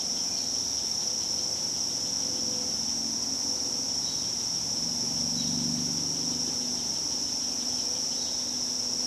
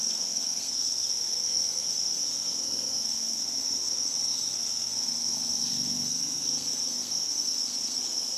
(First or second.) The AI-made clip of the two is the second